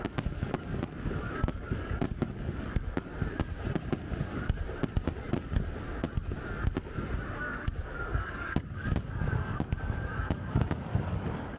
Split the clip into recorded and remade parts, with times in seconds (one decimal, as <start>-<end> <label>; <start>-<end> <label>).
0.0-3.1 remade; 3.1-7.4 recorded; 7.4-11.6 remade